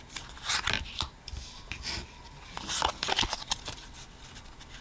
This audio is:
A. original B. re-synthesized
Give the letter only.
A